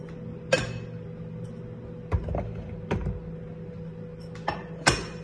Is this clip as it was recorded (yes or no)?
yes